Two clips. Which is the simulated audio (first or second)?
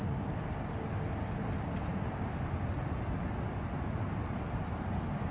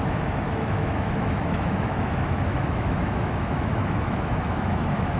second